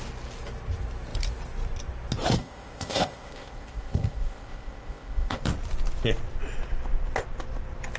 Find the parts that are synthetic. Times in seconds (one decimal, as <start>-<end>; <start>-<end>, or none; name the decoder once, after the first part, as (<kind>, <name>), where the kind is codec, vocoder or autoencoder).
2.4-5.4 (codec, ZipCodec)